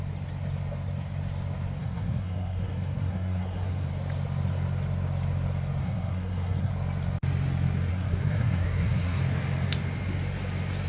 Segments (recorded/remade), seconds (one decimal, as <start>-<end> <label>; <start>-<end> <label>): 0.0-1.8 recorded; 1.8-3.9 remade; 3.9-5.8 recorded; 5.8-6.7 remade; 6.7-7.9 recorded; 7.9-9.2 remade; 9.2-10.9 recorded